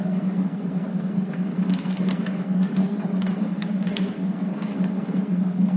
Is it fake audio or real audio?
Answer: fake